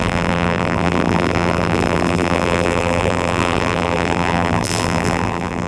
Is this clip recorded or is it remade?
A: remade